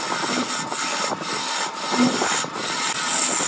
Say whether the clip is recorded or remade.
recorded